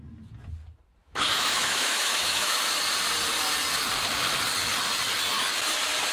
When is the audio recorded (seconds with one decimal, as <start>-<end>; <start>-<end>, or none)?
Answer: 0.0-1.0; 2.6-6.1